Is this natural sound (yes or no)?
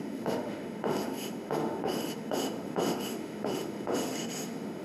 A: no